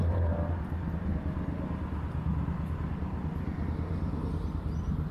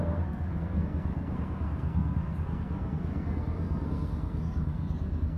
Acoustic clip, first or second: first